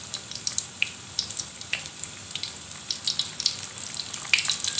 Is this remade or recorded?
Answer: remade